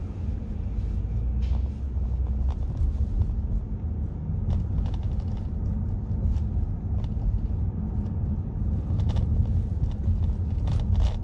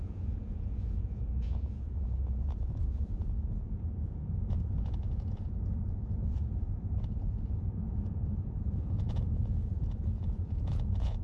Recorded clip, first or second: first